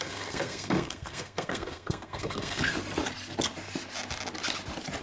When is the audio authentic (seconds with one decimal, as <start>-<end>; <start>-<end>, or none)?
2.7-5.0